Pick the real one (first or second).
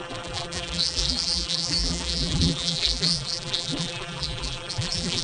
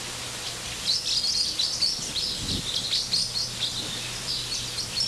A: second